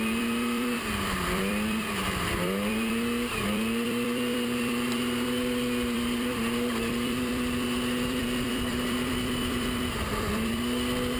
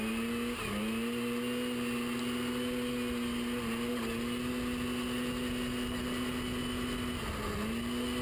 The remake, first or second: first